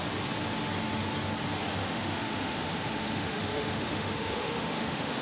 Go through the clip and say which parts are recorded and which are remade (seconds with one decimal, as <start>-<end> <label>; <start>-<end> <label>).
0.0-1.8 recorded; 1.8-5.2 remade